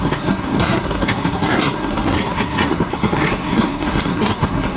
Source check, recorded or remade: remade